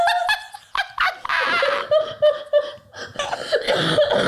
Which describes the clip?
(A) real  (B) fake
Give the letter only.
A